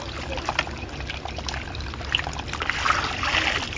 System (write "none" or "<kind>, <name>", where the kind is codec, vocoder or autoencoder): none